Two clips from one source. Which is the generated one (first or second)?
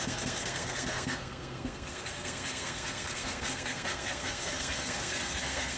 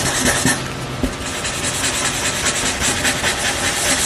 first